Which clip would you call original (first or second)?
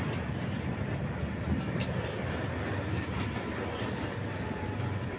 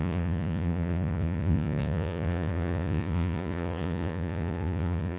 first